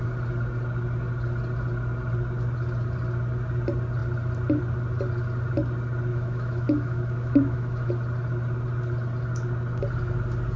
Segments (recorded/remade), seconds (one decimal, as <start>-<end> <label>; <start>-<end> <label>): 0.0-6.1 recorded; 6.1-7.9 remade; 7.9-10.6 recorded